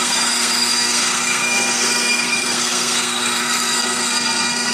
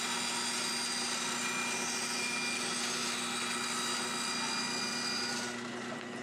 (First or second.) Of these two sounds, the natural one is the second